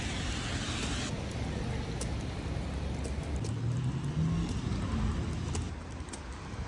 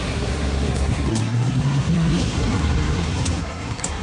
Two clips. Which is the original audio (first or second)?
first